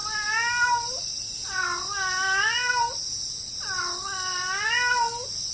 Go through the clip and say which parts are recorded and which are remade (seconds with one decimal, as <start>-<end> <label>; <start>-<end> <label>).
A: 0.0-5.5 recorded